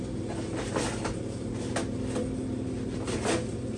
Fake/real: real